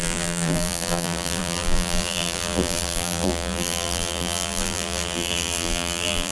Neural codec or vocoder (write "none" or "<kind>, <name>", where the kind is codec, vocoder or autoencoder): vocoder, BigVGAN v2